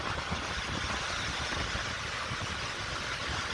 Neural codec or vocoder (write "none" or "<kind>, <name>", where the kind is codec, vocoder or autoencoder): none